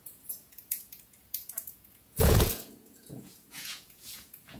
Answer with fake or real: fake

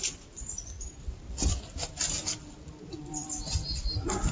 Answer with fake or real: real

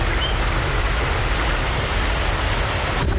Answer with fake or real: real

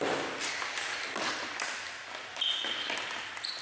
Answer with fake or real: real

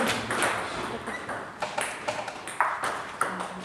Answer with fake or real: real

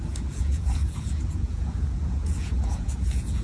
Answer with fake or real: fake